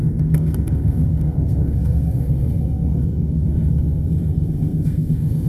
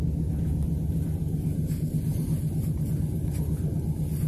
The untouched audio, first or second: second